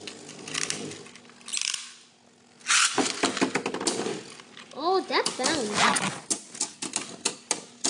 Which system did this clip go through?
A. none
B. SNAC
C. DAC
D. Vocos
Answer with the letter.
A